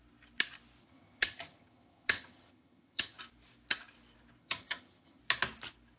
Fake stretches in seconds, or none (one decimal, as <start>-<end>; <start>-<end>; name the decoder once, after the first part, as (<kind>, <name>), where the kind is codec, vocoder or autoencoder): 0.8-3.2 (vocoder, HiFi-GAN); 4.4-5.2